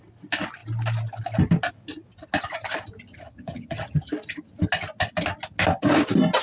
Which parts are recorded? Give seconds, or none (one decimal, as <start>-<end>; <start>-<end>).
0.0-3.1; 4.1-6.4